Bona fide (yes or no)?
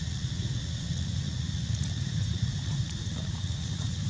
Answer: no